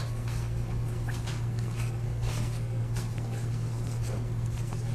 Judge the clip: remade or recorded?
remade